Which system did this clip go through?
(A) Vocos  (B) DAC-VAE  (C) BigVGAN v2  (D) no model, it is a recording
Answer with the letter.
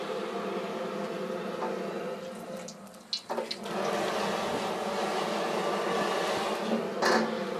D